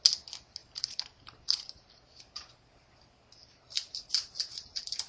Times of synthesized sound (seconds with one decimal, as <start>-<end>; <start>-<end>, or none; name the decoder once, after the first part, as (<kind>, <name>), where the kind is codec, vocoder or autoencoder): 0.6-2.5 (vocoder, BigVGAN v2); 3.4-5.1